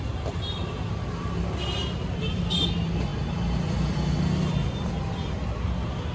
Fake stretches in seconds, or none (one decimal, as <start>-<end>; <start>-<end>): none